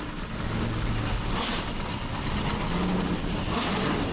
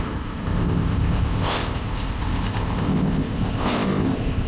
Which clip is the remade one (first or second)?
second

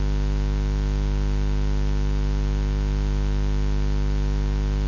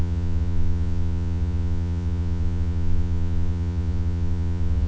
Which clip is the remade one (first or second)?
second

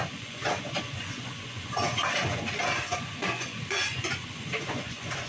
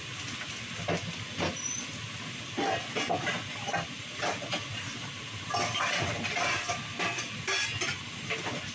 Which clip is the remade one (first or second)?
first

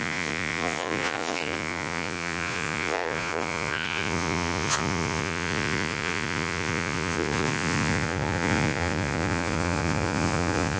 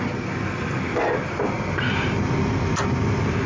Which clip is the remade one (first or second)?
first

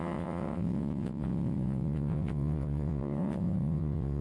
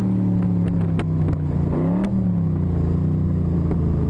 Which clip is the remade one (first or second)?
first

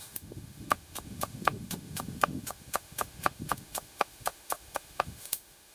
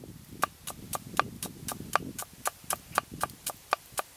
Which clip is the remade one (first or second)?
first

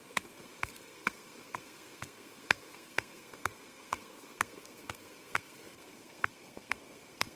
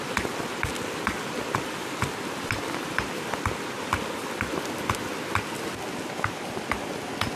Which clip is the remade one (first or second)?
first